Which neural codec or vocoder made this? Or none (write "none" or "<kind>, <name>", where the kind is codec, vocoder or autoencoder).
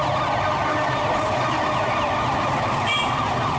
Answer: none